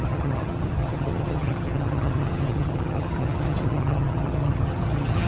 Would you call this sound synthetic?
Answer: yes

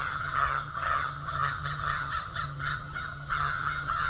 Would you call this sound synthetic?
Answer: yes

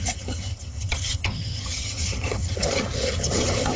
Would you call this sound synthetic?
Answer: yes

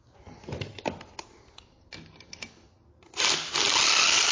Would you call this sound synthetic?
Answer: no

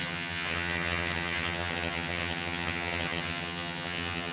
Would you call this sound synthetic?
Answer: yes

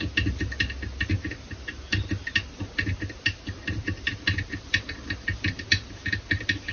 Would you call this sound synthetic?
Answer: no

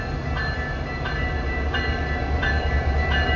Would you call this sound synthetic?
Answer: no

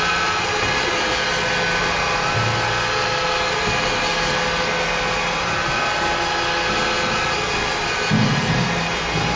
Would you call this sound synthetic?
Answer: no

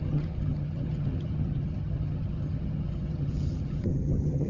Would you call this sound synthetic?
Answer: yes